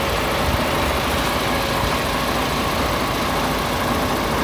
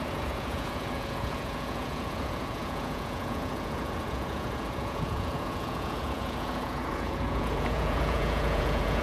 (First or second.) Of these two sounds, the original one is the first